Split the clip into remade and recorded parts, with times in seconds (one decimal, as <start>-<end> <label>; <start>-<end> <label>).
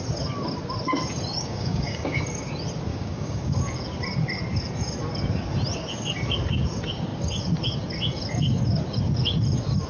0.0-1.3 recorded; 1.3-2.2 remade; 2.2-2.9 recorded; 2.9-3.6 remade; 3.6-9.9 recorded